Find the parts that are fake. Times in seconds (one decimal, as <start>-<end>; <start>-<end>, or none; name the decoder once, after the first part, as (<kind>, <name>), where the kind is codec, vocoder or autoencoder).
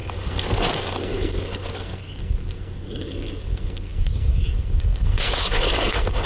0.0-6.3 (codec, SNAC)